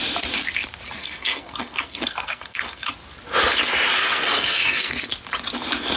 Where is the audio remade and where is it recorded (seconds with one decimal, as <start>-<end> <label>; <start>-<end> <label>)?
0.0-1.0 recorded; 1.0-2.9 remade; 2.9-4.0 recorded; 4.0-4.9 remade; 4.9-6.0 recorded